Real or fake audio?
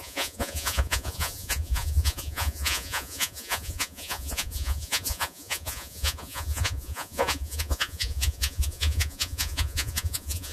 fake